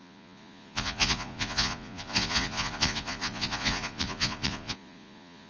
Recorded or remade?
remade